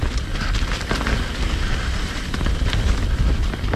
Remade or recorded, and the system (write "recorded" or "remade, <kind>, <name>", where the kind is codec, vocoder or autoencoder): recorded